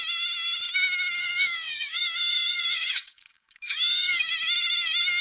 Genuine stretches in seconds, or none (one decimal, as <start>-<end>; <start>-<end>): 0.0-1.2; 4.3-5.2